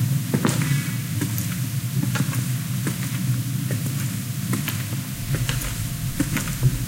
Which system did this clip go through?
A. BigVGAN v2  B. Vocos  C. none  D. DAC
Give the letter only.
C